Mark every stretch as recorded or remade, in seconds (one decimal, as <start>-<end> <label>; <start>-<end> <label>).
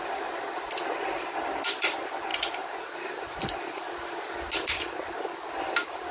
0.0-6.1 recorded